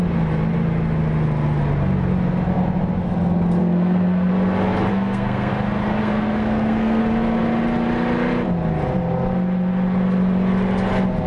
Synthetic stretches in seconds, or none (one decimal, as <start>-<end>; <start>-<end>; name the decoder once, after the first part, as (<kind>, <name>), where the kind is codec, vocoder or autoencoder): 3.6-4.3 (codec, SNAC); 4.9-5.5; 6.0-7.0